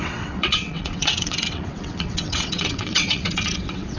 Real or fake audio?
fake